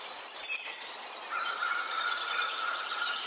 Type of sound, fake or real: fake